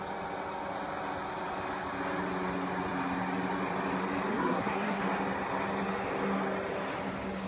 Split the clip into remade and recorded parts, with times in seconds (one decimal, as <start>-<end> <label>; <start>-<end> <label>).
0.0-4.3 recorded; 4.3-5.0 remade; 5.0-7.5 recorded